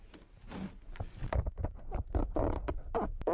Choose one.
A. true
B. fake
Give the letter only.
A